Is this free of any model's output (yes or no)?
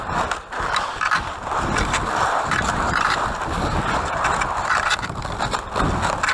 yes